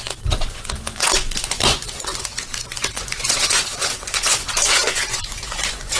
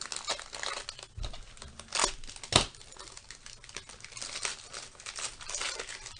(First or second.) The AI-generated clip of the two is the first